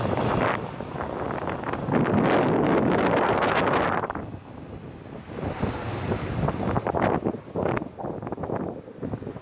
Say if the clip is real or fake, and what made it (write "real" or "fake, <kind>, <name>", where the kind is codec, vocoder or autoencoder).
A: real